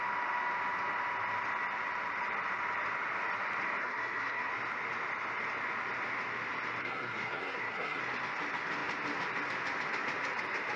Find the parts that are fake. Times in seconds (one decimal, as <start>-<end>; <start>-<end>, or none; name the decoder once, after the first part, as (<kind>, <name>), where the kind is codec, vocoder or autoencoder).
3.8-4.5 (codec, SNAC); 6.8-8.0